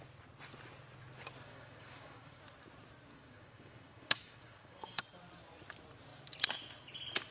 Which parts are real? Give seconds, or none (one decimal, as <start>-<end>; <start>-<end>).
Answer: 0.0-1.5; 2.4-3.1; 5.0-7.3